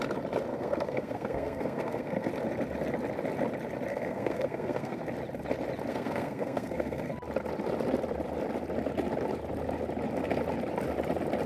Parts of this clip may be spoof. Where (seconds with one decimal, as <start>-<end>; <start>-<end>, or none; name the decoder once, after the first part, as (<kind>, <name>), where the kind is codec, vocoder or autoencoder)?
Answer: 0.5-2.3 (codec, SNAC); 3.9-5.0; 5.9-7.1